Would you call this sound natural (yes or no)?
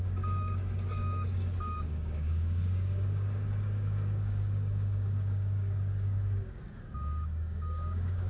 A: no